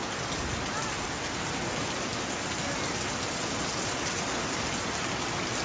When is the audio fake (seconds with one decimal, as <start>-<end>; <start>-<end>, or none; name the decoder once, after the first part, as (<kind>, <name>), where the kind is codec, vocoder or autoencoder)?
none

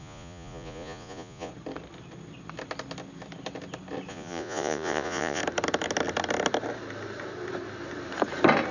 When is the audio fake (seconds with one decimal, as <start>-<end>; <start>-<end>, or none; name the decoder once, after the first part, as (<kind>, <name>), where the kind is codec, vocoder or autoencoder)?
0.0-1.5 (vocoder, Vocos); 4.1-5.4

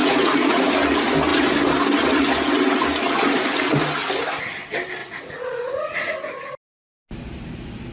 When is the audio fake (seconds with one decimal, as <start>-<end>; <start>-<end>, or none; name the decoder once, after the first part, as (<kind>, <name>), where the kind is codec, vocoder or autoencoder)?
0.0-0.7 (vocoder, Vocos); 5.0-6.1

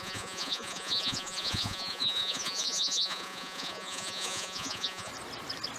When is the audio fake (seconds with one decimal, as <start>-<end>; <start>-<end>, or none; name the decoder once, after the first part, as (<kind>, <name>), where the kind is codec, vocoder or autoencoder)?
0.0-5.1 (vocoder, Vocos)

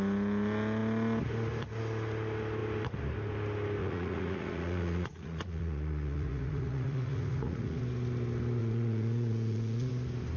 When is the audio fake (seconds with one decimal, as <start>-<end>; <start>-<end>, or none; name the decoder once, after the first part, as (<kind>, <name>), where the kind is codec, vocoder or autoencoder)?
3.8-7.8 (vocoder, Vocos); 8.6-9.9

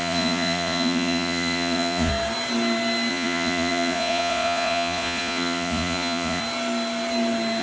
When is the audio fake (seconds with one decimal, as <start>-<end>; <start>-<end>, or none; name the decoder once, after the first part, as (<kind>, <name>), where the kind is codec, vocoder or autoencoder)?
0.0-2.1 (vocoder, Vocos); 3.1-6.4